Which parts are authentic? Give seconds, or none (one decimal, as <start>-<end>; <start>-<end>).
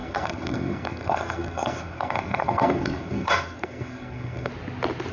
4.5-5.1